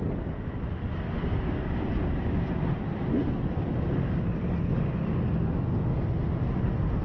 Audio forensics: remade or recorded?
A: recorded